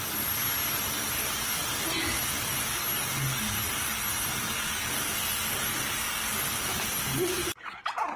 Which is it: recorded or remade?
recorded